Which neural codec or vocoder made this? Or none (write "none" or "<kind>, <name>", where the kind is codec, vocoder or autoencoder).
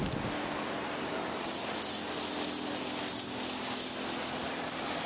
none